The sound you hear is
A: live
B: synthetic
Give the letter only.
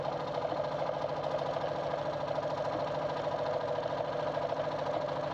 A